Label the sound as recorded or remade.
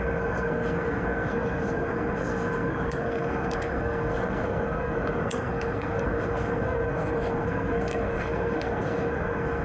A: remade